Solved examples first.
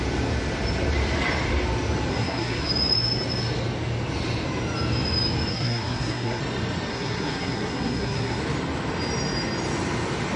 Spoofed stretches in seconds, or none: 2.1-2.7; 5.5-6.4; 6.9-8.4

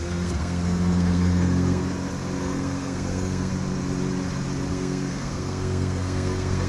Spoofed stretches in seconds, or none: 0.0-1.8; 2.4-3.5; 4.7-6.7

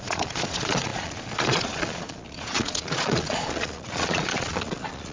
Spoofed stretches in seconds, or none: 0.0-5.1